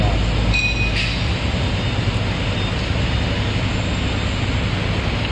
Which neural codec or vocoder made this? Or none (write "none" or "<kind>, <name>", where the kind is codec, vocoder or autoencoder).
none